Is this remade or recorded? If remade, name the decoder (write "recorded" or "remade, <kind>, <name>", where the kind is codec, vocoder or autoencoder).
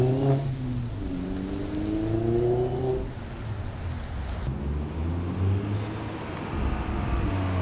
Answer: recorded